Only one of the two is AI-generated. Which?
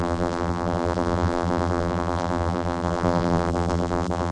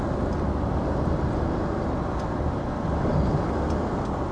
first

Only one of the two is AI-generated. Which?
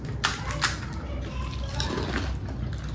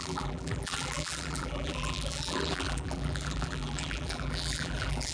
second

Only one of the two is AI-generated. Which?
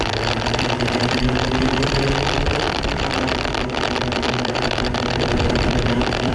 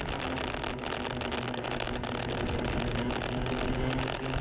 first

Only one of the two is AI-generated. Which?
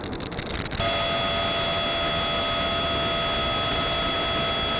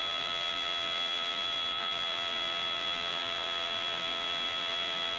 second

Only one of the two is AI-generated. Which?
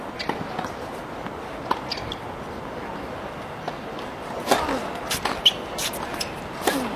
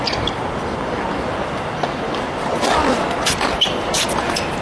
second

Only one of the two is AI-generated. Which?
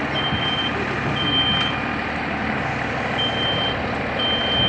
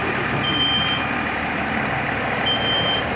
second